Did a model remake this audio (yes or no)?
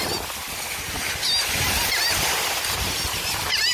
no